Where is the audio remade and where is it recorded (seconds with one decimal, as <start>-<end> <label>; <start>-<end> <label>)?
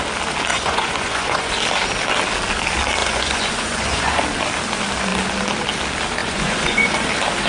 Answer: 0.0-0.5 recorded; 0.5-1.5 remade; 1.5-3.0 recorded; 3.0-4.2 remade; 4.2-6.2 recorded; 6.2-7.1 remade; 7.1-7.5 recorded